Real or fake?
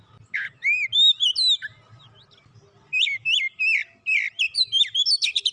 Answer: real